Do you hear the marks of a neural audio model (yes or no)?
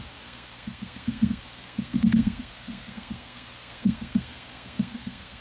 yes